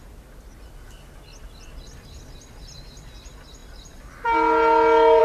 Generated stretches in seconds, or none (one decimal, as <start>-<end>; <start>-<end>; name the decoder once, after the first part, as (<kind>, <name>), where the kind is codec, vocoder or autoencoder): none